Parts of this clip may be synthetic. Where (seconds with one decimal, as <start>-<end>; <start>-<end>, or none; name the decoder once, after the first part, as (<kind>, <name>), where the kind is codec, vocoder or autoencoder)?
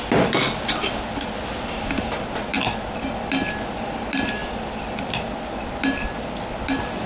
none